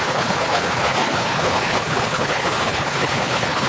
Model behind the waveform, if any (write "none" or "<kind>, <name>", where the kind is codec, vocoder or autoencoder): codec, HILCodec